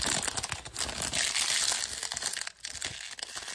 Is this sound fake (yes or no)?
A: no